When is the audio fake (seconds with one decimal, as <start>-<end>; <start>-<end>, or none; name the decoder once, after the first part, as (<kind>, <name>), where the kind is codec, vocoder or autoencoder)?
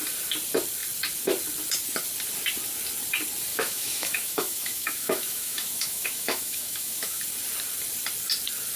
3.5-7.2 (autoencoder, DAC-VAE)